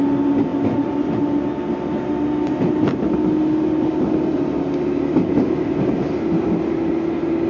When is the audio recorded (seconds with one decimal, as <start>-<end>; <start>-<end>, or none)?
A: 0.0-7.5